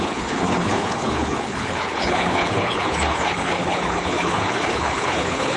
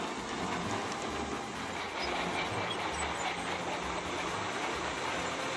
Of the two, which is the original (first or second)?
second